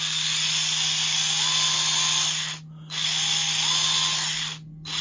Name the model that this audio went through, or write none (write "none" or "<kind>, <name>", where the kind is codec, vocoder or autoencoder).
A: none